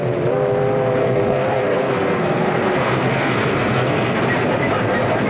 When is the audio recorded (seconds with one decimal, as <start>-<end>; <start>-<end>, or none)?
0.0-1.0; 4.2-5.3